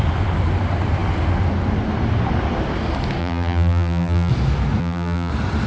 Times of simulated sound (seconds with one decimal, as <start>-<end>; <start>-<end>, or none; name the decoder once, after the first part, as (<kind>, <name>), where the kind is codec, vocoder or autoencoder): 3.2-4.3 (vocoder, BigVGAN v2); 4.8-5.3